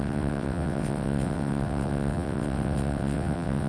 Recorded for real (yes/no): no